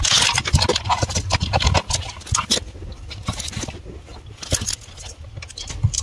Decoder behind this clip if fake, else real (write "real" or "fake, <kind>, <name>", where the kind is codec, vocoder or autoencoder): real